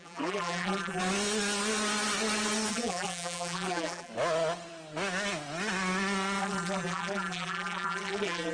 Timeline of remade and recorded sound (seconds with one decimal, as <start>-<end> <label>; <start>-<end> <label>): 0.0-1.0 remade; 1.0-2.7 recorded; 2.7-4.1 remade; 4.1-6.4 recorded; 6.4-8.5 remade

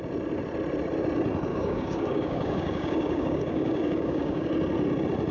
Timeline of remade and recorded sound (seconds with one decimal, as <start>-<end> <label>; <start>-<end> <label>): 0.0-1.5 recorded; 1.5-4.5 remade; 4.5-5.3 recorded